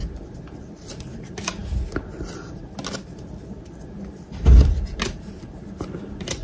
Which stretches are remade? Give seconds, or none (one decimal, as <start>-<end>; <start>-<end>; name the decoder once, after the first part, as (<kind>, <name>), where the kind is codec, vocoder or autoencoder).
none